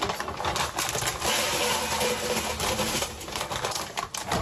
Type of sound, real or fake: real